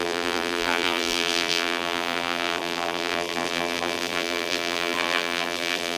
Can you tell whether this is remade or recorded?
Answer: remade